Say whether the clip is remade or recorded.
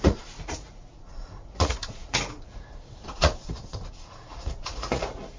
remade